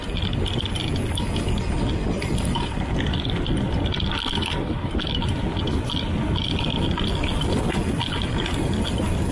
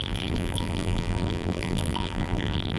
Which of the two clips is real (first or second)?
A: first